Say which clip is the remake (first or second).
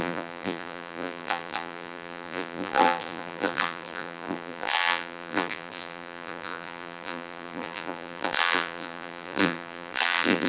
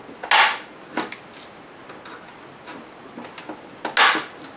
first